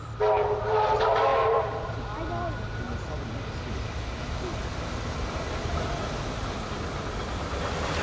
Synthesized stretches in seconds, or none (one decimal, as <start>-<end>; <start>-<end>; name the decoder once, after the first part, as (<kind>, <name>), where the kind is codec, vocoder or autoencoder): 1.3-1.9 (vocoder, BigVGAN v2)